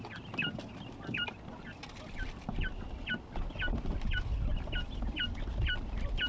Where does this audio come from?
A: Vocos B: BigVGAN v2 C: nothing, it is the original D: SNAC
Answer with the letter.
C